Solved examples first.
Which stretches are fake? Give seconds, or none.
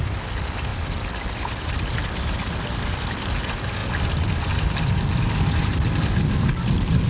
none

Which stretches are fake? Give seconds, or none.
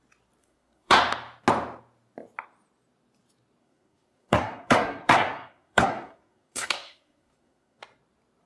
0.4-1.0 (codec, SNAC); 3.6-7.8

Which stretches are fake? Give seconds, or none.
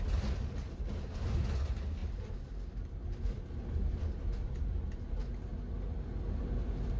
none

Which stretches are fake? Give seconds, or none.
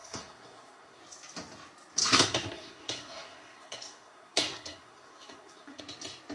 0.0-1.0 (codec, SNAC); 2.0-5.8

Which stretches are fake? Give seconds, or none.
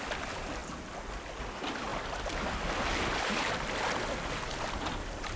none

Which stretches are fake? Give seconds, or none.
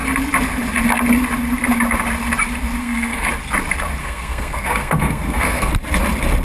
2.8-3.3 (codec, SNAC); 4.0-5.7